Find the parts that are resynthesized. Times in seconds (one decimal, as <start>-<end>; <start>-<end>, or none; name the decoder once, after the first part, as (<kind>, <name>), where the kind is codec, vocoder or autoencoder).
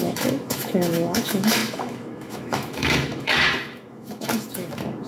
0.0-5.1 (autoencoder, DAC-VAE)